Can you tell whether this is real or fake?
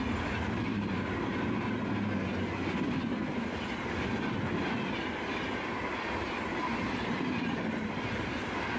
real